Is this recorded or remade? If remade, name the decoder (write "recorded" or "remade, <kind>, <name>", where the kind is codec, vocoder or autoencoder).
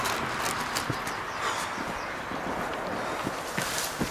recorded